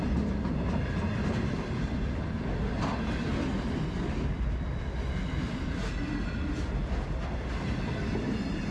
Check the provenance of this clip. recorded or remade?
recorded